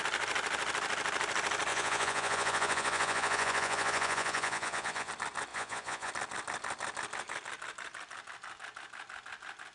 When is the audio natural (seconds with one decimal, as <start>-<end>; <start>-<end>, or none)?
0.0-1.7; 5.1-5.5; 6.1-9.7